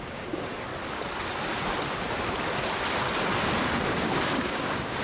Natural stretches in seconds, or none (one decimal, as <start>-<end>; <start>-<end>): 0.7-3.7

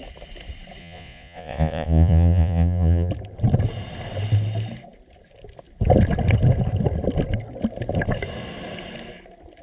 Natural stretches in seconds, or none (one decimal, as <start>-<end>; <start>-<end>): 0.0-0.8; 3.1-9.6

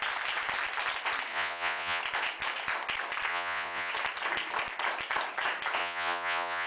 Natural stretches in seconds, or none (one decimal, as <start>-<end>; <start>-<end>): 0.0-1.3; 2.0-3.3; 3.9-5.8

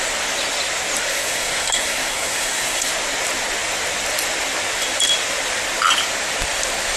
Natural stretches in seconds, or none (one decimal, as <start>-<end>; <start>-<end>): 0.0-1.1; 2.9-7.0

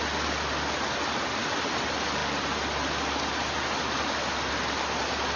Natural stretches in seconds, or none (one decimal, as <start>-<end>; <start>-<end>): 0.0-5.4

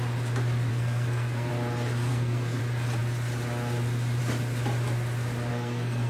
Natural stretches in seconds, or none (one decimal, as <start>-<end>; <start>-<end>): 0.0-0.7; 1.5-2.1; 2.6-5.5

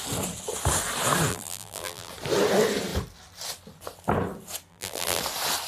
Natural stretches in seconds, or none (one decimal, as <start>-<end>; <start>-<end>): 0.0-1.3; 2.1-4.7; 5.2-5.7

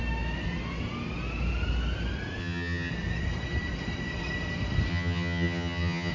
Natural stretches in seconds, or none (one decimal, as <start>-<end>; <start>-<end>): 0.0-2.4; 2.9-4.9